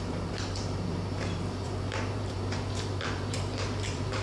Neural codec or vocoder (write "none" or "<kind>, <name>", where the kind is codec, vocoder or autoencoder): vocoder, BigVGAN v2